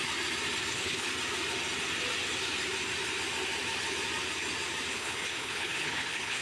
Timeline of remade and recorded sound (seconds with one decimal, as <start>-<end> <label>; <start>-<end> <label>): 0.0-0.7 recorded; 0.7-1.1 remade; 1.1-4.9 recorded; 4.9-6.4 remade